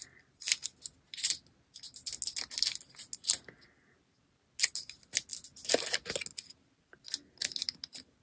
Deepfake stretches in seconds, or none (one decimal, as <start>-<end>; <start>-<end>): none